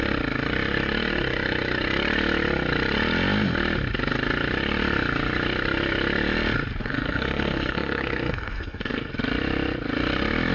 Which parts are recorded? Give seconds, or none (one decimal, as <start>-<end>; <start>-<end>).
0.0-6.8; 9.1-10.5